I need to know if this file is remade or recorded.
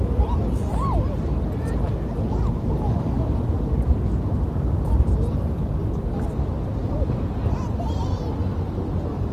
recorded